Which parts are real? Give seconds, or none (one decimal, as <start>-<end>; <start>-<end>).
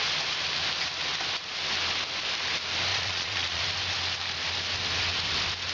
0.0-2.9; 3.6-5.7